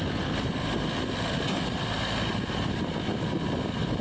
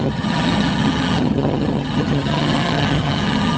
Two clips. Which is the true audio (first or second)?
first